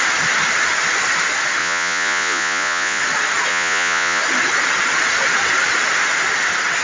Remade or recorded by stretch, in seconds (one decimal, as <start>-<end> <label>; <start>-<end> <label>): 0.0-1.6 recorded; 1.6-3.0 remade; 3.0-3.5 recorded; 3.5-4.2 remade; 4.2-6.8 recorded